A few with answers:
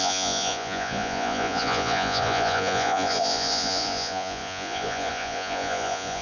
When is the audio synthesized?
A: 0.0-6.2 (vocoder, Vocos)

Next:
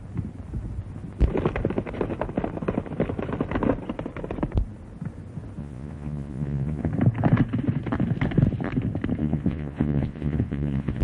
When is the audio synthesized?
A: 5.6-6.9 (vocoder, Vocos); 9.2-11.0

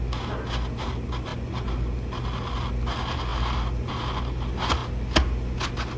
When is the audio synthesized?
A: none

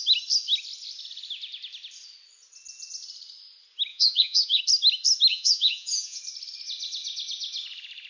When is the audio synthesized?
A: 3.9-4.6 (vocoder, Vocos); 5.3-6.2